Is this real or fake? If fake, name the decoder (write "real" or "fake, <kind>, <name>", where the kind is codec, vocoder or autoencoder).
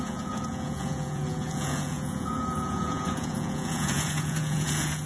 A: fake, vocoder, Vocos